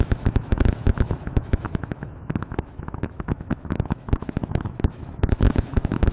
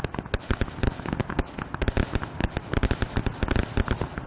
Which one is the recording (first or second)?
second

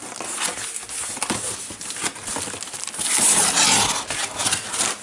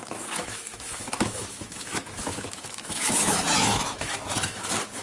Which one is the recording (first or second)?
first